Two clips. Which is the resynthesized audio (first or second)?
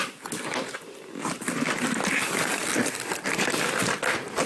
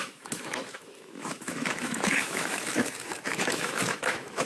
second